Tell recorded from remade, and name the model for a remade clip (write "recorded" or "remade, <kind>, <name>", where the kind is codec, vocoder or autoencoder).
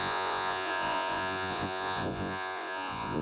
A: remade, vocoder, Vocos